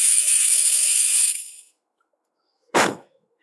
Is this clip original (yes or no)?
no